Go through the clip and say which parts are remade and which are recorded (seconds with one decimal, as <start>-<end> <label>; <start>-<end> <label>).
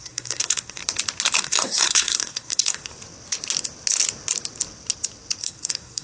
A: 0.0-0.8 remade; 0.8-1.4 recorded; 1.4-2.9 remade; 2.9-5.4 recorded; 5.4-6.0 remade